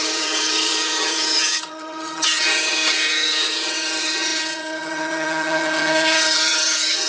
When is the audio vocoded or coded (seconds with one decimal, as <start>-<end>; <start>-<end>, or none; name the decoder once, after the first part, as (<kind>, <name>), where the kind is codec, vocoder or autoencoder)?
0.0-7.1 (vocoder, HiFi-GAN)